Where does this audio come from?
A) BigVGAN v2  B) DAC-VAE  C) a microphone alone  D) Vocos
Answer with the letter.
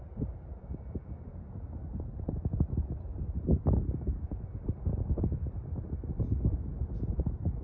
C